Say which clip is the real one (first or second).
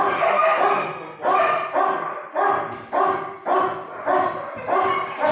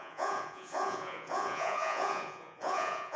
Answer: first